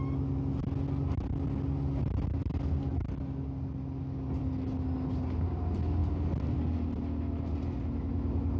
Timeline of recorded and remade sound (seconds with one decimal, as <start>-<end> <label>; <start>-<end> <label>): 0.0-8.6 recorded